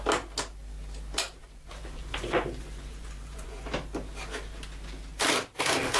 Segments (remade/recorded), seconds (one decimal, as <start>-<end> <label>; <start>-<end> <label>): 0.0-1.4 recorded; 1.4-3.7 remade; 3.7-6.0 recorded